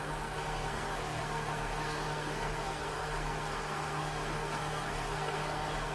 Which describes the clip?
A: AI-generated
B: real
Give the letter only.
A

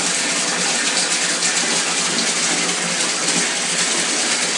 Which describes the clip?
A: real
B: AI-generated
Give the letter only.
A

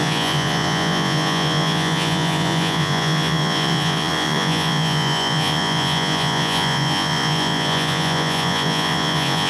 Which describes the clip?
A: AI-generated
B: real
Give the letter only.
A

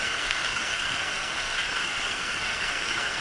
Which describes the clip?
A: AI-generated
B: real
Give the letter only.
A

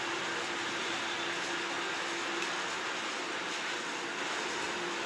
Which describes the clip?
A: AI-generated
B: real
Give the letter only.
B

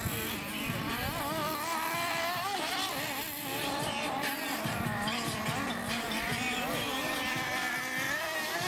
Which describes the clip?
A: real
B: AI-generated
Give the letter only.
A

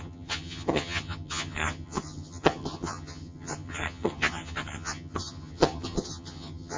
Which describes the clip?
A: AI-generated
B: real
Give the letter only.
A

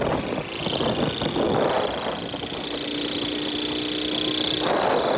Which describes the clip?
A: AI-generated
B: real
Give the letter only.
B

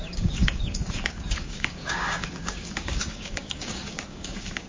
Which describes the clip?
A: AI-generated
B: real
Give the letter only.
A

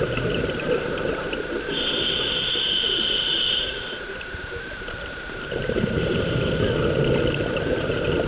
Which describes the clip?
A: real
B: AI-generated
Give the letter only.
A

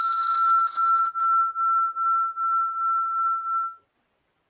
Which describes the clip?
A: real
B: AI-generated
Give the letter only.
A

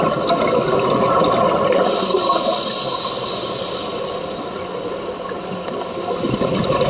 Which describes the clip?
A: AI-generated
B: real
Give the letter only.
B